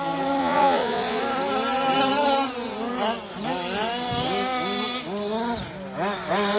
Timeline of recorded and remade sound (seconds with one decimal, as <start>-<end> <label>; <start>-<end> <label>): 0.0-0.4 recorded; 0.4-1.2 remade; 1.2-6.6 recorded